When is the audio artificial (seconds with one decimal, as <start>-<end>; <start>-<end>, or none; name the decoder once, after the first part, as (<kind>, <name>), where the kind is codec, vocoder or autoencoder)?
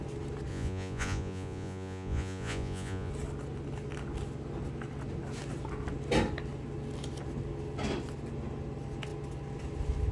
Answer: 0.5-3.1 (vocoder, Vocos)